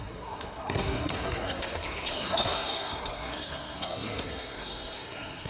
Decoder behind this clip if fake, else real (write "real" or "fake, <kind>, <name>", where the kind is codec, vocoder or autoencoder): fake, codec, SNAC